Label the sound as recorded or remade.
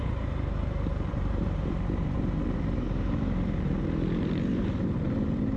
remade